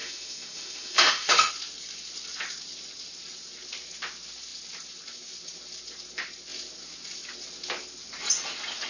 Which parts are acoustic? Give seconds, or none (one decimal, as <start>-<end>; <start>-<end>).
1.5-8.9